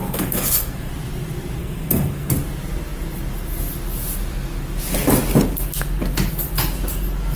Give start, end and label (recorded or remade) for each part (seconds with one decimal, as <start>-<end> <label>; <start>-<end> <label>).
0.0-0.9 remade; 0.9-1.6 recorded; 1.6-2.3 remade; 2.3-7.3 recorded